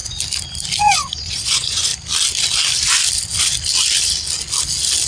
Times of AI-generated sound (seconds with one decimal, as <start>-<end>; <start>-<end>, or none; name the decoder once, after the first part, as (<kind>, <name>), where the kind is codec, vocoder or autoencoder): 0.8-1.9 (vocoder, Vocos)